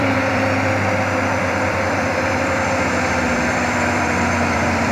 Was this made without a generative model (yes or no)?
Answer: no